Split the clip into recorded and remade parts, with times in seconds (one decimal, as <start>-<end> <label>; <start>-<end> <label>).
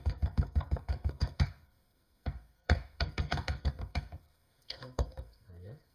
0.0-5.9 remade